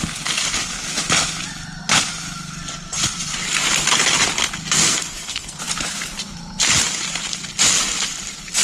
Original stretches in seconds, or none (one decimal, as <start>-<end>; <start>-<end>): 0.0-4.8; 5.6-8.6